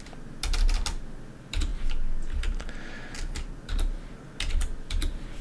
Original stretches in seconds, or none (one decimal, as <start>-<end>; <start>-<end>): 0.0-5.4